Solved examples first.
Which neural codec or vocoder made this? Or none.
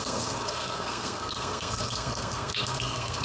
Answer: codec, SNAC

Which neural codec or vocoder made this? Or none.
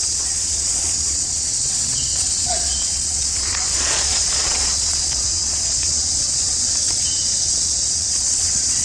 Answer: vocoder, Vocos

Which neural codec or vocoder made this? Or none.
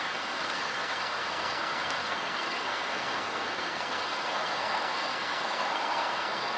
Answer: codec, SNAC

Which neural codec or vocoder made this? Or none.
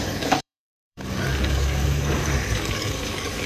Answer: codec, DAC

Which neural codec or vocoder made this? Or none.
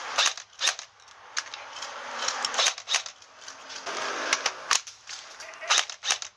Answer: none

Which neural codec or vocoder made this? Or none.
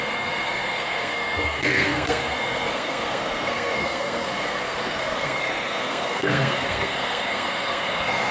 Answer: codec, SNAC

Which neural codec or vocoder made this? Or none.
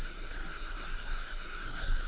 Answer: codec, SNAC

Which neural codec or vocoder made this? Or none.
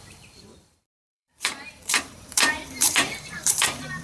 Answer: vocoder, BigVGAN v2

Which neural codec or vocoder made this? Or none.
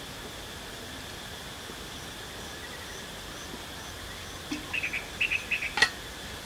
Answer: none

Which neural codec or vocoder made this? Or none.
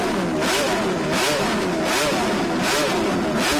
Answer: none